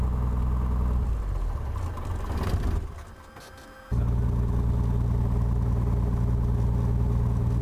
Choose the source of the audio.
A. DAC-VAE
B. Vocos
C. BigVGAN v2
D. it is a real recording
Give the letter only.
D